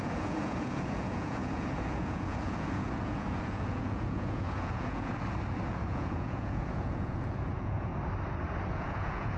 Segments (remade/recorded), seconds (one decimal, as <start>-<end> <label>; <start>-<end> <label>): 0.0-5.1 remade; 5.1-5.7 recorded; 5.7-7.9 remade; 7.9-8.7 recorded; 8.7-9.4 remade